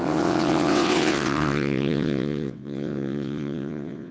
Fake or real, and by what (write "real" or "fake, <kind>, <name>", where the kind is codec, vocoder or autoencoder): fake, vocoder, WaveNeXt